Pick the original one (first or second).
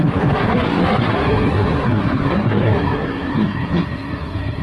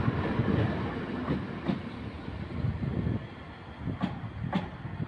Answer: second